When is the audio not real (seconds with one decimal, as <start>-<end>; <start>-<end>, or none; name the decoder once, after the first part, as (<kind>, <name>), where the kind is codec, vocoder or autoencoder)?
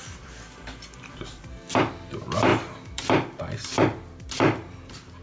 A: 0.0-5.2 (vocoder, BigVGAN v2)